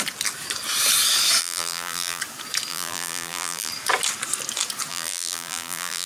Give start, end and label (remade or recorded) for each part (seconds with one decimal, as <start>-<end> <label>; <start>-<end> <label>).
0.0-1.4 recorded; 1.4-2.2 remade; 2.2-2.7 recorded; 2.7-3.7 remade; 3.7-4.9 recorded; 4.9-6.1 remade